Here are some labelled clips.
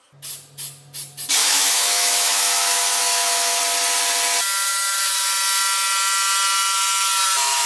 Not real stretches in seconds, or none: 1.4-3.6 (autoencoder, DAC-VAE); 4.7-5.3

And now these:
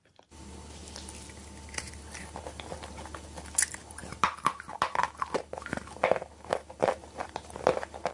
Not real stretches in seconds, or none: none

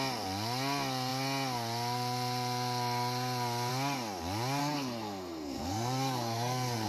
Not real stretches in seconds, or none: 4.6-6.9 (codec, SNAC)

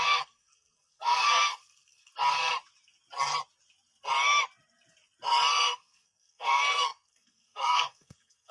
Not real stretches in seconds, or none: 0.0-2.1 (codec, SNAC); 5.5-8.5

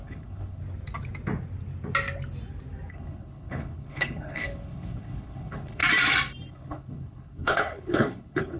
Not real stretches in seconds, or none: 0.0-0.6 (codec, HILCodec); 2.9-5.8; 6.5-8.6

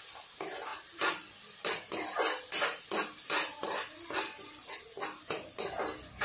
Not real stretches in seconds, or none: none

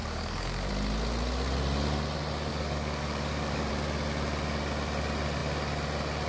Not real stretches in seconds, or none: 0.0-0.7 (codec, DAC); 2.5-3.7

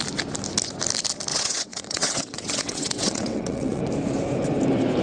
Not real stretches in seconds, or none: 1.3-3.8 (vocoder, WaveNeXt)